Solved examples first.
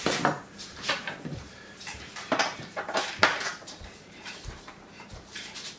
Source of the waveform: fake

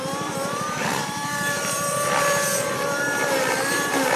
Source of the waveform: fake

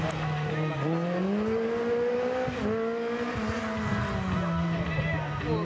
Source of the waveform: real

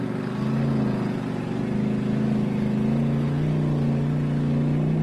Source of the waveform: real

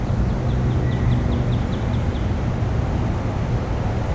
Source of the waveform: real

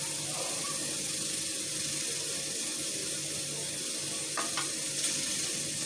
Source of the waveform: real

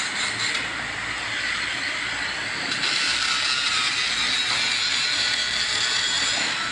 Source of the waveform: fake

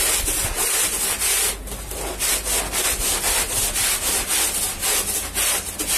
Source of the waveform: real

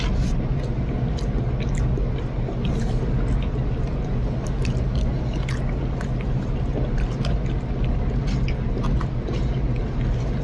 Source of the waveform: real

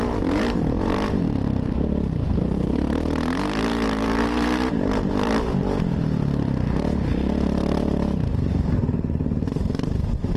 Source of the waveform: fake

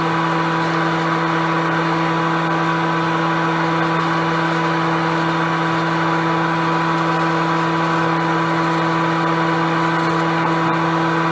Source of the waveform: real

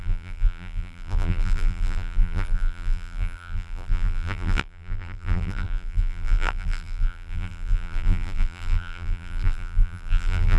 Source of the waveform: fake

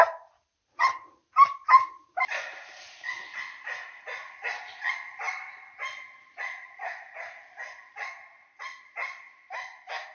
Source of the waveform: real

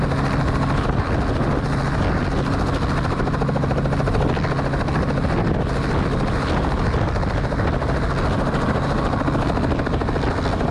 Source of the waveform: real